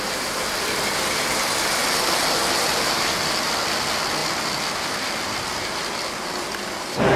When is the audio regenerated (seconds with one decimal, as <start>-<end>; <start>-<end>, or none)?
4.2-4.7